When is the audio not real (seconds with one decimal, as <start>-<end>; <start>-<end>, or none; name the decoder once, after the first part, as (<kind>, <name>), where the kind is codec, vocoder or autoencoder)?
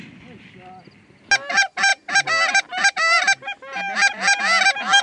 none